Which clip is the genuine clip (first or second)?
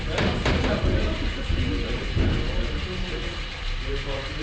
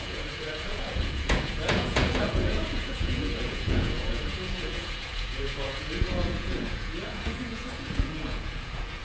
first